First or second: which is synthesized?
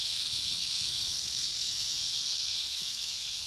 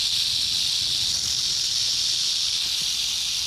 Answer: first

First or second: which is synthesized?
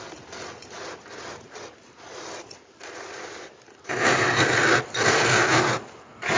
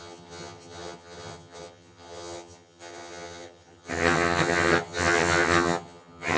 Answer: second